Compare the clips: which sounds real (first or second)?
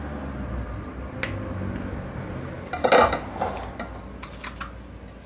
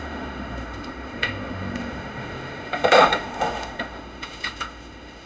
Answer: first